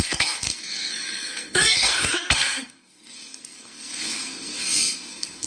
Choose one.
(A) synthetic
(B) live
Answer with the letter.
A